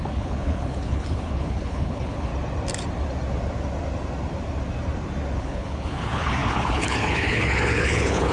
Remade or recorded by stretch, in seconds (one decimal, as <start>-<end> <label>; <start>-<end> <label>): 0.0-2.3 remade; 2.3-5.4 recorded; 5.4-8.3 remade